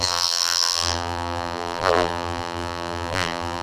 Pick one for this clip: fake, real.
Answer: fake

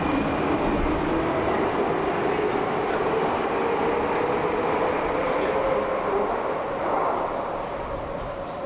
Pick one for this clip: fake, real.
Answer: real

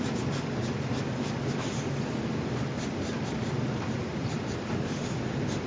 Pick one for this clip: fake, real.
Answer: fake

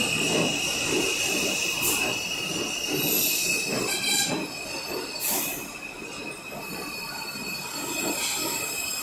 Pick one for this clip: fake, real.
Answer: fake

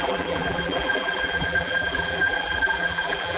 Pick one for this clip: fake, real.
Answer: fake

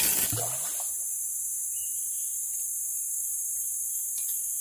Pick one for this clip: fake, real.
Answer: fake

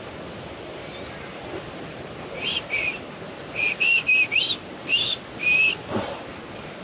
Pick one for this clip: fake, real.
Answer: real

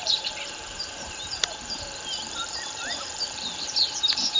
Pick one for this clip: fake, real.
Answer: fake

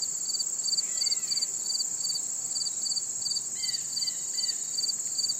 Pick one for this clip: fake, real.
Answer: real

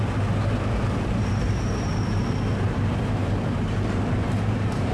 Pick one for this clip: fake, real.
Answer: fake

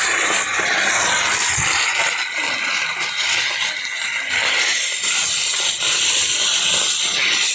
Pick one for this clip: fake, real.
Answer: real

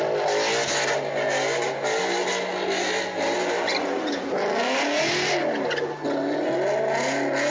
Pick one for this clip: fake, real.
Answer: real